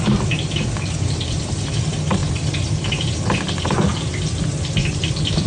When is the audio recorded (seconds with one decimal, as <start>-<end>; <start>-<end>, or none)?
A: 0.0-5.5